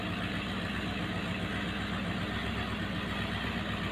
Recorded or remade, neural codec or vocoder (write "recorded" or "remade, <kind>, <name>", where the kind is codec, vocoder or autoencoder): recorded